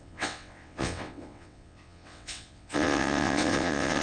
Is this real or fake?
fake